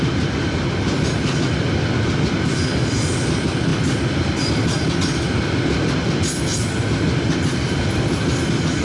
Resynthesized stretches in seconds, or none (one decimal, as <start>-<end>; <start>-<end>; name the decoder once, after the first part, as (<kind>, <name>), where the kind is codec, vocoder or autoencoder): none